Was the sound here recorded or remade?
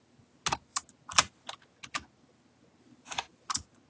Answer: recorded